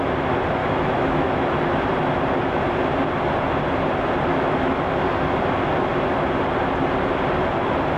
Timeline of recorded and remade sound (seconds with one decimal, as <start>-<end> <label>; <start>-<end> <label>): 0.0-0.6 recorded; 0.6-1.4 remade; 1.4-4.3 recorded; 4.3-4.9 remade; 4.9-8.0 recorded

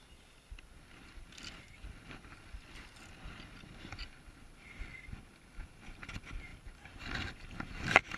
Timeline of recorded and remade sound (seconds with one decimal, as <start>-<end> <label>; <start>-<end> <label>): 0.0-8.2 recorded

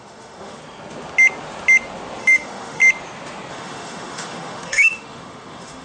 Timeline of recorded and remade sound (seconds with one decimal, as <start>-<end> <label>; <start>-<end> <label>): 0.0-0.6 remade; 0.6-2.2 recorded; 2.2-2.8 remade; 2.8-3.5 recorded; 3.5-5.8 remade

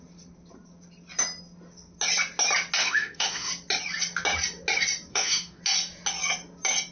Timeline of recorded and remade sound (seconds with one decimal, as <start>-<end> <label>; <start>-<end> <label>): 0.0-2.8 recorded; 2.8-3.5 remade; 3.5-5.1 recorded; 5.1-5.6 remade; 5.6-6.9 recorded

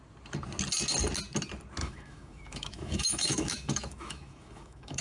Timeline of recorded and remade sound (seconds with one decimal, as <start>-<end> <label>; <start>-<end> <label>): 0.0-1.8 recorded; 1.8-5.0 remade